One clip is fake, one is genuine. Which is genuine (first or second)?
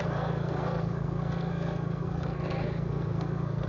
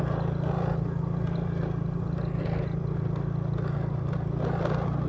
second